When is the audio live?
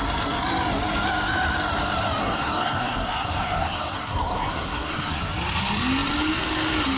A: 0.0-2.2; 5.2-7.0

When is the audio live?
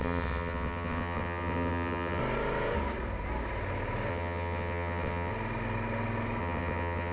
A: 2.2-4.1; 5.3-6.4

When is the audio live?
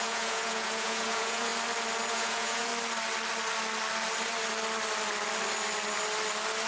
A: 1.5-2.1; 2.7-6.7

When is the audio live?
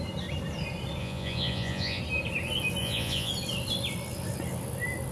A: 0.0-1.0; 2.0-2.8; 3.3-5.1